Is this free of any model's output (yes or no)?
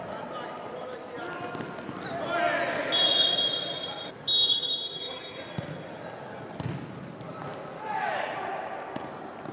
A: yes